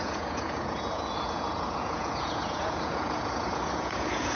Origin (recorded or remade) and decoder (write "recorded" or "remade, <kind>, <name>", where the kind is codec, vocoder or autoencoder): remade, vocoder, Vocos